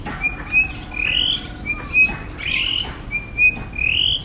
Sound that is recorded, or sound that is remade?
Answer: recorded